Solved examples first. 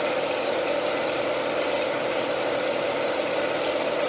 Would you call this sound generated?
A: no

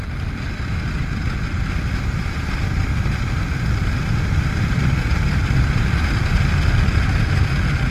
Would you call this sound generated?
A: no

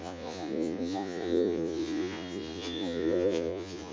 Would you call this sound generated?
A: yes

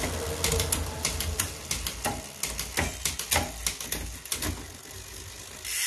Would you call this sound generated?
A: no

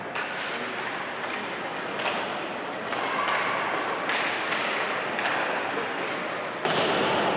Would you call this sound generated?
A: no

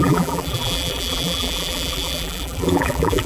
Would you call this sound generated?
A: yes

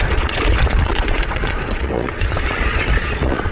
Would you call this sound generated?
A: yes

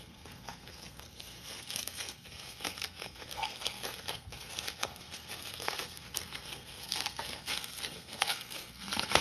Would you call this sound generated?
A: yes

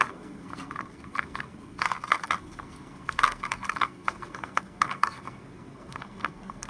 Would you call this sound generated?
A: yes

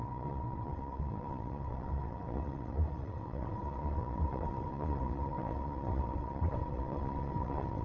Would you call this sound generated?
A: yes